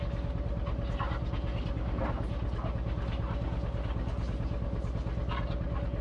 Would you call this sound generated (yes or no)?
no